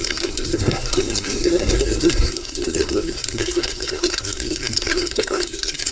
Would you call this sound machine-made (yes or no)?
yes